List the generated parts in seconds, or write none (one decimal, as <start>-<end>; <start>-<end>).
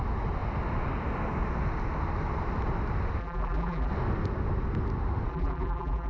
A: 3.2-3.9; 5.3-6.1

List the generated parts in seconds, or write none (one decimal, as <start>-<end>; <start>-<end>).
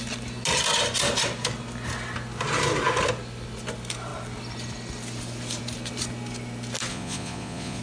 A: 6.9-7.8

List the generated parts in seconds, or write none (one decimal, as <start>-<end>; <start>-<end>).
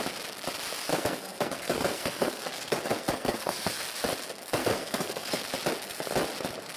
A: 0.9-3.8; 4.6-5.4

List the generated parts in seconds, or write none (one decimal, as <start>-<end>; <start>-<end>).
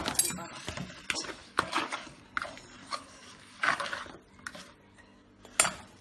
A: 1.4-2.2; 2.8-3.9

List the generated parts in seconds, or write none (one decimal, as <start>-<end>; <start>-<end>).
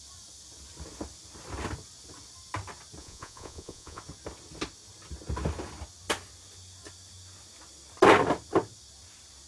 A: 3.0-4.0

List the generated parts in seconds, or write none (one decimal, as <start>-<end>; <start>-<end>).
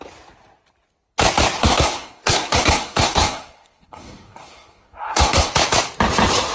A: 1.6-5.5